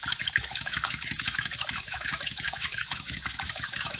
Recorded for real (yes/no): no